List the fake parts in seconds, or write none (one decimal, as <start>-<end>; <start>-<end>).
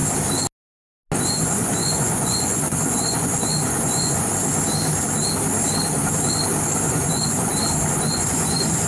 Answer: 1.2-4.3; 6.8-7.5; 8.1-8.9